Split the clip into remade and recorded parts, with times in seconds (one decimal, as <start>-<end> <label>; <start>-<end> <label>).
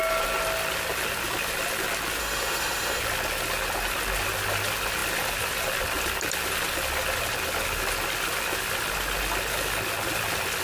0.0-2.2 recorded; 2.2-3.0 remade; 3.0-10.6 recorded